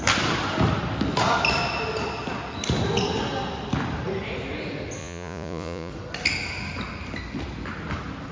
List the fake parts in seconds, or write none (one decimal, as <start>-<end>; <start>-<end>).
5.0-5.9